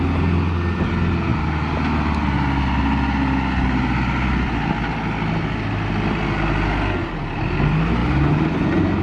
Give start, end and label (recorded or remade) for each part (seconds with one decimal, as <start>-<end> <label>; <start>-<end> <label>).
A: 0.0-9.0 recorded